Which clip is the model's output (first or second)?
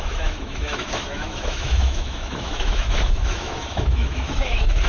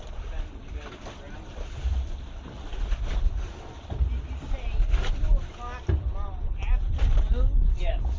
first